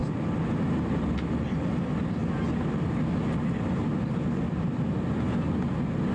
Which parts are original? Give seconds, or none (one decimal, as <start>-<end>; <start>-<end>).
0.0-6.1